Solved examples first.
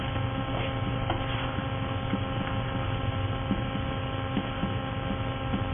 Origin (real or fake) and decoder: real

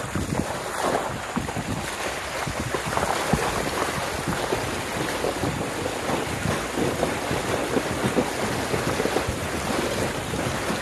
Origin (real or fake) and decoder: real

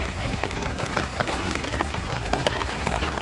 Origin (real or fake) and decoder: fake, codec, SNAC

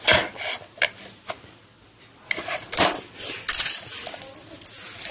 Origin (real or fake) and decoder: real